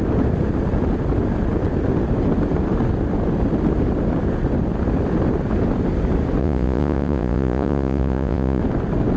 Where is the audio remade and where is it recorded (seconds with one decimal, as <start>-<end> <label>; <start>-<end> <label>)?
0.0-6.4 recorded; 6.4-8.6 remade; 8.6-9.2 recorded